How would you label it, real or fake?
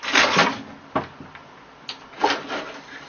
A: real